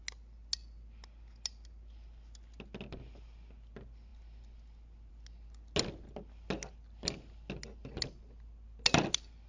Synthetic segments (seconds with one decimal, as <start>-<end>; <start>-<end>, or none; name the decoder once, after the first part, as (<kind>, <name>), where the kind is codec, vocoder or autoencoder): none